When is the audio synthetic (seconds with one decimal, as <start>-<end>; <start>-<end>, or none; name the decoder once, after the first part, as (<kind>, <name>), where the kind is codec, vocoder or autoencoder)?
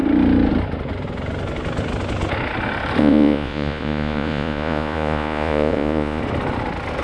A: 3.0-6.2 (vocoder, Vocos)